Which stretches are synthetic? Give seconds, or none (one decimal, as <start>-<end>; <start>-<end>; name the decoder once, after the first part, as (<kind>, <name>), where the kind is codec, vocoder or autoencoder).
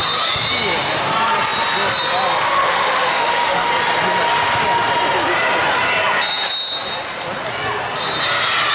2.5-3.7 (autoencoder, DAC-VAE)